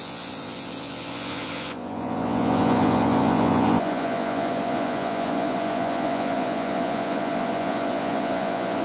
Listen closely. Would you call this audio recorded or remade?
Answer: remade